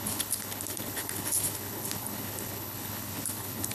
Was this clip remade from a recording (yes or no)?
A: yes